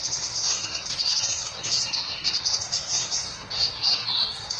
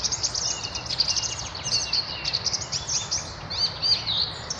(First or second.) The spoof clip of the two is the first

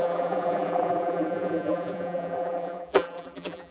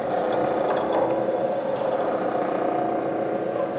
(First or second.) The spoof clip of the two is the first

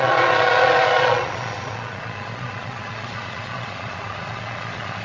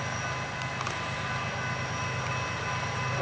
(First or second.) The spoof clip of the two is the first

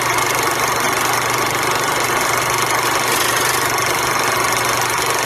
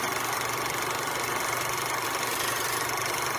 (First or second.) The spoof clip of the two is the second